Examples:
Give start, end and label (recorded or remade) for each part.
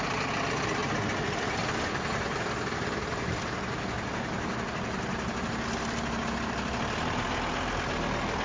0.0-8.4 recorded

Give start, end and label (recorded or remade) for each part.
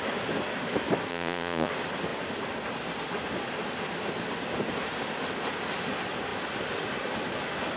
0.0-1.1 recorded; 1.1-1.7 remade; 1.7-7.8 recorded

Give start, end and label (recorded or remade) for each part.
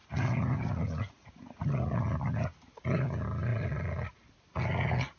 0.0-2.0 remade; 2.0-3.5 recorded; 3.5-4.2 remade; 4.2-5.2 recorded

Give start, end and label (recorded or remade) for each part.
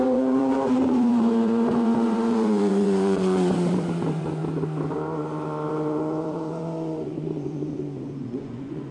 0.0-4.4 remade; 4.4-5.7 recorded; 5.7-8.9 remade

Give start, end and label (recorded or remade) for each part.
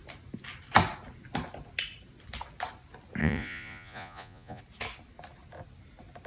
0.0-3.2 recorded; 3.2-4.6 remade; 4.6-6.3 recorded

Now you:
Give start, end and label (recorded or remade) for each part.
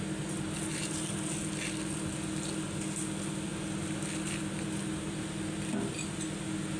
0.0-6.8 recorded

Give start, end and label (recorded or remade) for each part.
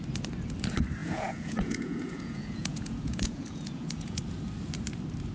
0.0-1.0 recorded; 1.0-4.2 remade; 4.2-5.3 recorded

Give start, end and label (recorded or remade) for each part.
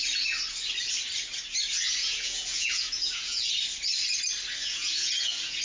0.0-2.0 recorded; 2.0-3.5 remade; 3.5-4.6 recorded; 4.6-5.6 remade